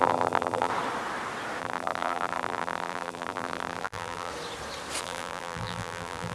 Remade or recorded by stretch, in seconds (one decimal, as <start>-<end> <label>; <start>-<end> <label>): 0.0-0.7 remade; 0.7-1.6 recorded; 1.6-4.3 remade; 4.3-5.0 recorded; 5.0-6.3 remade